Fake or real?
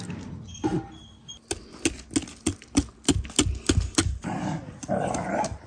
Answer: real